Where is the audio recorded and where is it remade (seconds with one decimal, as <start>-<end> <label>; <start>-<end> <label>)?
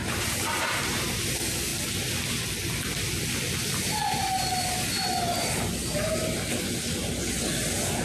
0.0-1.2 remade; 1.2-8.0 recorded